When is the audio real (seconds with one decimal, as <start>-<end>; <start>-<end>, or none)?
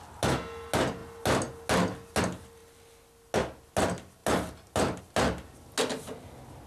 0.0-6.7